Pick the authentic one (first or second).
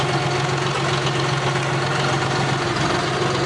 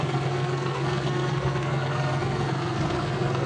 first